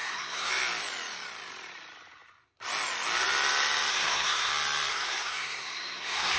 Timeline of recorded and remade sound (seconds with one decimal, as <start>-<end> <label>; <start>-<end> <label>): 0.0-0.5 remade; 0.5-3.9 recorded; 3.9-4.5 remade; 4.5-4.9 recorded; 4.9-6.4 remade